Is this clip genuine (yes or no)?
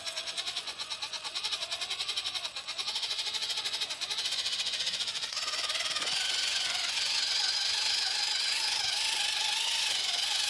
no